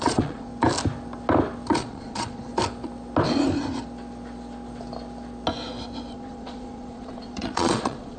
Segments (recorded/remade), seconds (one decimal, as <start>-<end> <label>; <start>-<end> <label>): 0.0-0.5 remade; 0.5-1.7 recorded; 1.7-2.5 remade; 2.5-6.1 recorded; 6.1-8.2 remade